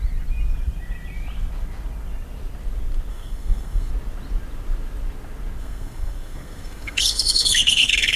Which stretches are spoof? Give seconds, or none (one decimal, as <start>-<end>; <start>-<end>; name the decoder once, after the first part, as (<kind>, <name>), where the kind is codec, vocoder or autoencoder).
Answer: 3.1-3.9 (codec, SNAC); 5.6-8.2